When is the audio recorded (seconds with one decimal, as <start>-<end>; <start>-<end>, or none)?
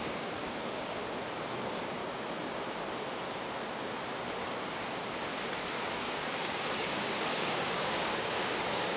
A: 1.0-1.6; 2.0-5.7